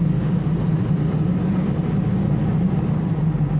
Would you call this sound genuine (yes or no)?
yes